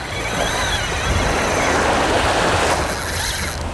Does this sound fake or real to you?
real